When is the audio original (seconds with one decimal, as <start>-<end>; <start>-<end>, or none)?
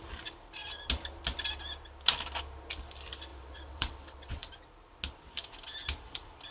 0.0-3.3; 4.5-6.5